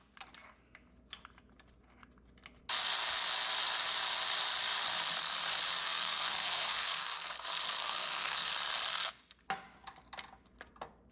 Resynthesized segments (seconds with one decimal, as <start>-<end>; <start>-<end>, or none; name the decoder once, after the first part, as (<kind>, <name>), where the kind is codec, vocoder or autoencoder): 5.8-8.5 (codec, SNAC); 8.9-9.4